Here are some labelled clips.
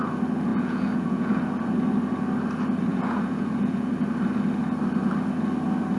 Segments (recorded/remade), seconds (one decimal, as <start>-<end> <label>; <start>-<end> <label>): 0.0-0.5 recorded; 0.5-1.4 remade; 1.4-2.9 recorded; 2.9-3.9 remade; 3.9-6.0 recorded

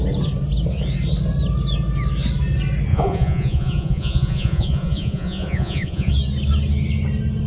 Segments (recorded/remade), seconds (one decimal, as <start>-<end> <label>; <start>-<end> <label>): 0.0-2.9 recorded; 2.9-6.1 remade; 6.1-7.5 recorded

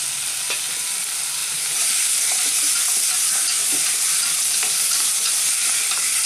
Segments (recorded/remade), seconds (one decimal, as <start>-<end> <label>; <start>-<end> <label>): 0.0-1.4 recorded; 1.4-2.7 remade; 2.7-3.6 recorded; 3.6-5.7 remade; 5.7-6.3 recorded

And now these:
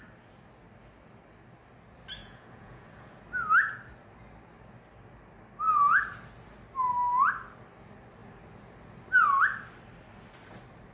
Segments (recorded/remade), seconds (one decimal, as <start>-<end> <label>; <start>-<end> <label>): 0.0-2.2 recorded; 2.2-3.2 remade; 3.2-10.9 recorded

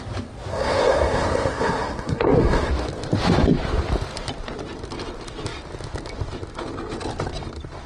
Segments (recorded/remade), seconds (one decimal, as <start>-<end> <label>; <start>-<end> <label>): 0.0-0.5 recorded; 0.5-2.7 remade; 2.7-7.9 recorded

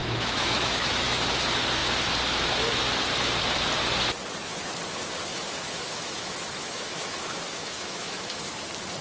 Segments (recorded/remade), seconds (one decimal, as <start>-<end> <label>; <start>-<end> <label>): 0.0-1.3 remade; 1.3-5.3 recorded; 5.3-8.5 remade; 8.5-9.0 recorded